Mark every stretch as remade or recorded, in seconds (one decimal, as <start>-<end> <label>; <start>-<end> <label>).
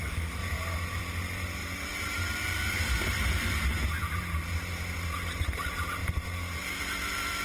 0.0-0.4 recorded; 0.4-1.0 remade; 1.0-1.6 recorded; 1.6-4.2 remade; 4.2-6.0 recorded; 6.0-6.8 remade; 6.8-7.4 recorded